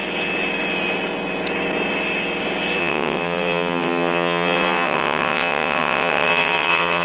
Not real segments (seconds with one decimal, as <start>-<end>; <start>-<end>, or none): 2.8-7.0